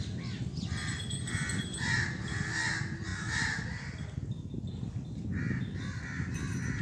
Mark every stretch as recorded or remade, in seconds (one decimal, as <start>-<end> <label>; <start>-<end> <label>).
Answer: 0.0-6.8 recorded